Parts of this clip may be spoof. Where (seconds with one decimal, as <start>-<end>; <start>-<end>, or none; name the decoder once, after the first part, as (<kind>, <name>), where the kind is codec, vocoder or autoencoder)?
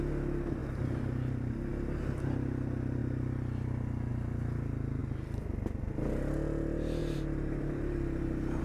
0.6-1.7 (vocoder, BigVGAN v2); 7.0-8.6